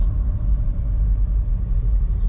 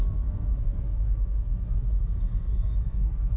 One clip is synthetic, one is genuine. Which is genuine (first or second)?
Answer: first